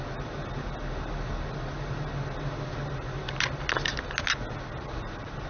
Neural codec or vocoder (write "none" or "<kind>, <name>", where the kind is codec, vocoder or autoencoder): none